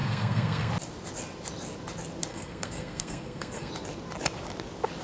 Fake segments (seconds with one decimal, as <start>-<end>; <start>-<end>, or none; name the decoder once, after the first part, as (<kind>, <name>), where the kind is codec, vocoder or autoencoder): 0.0-0.7 (codec, SNAC); 2.3-3.7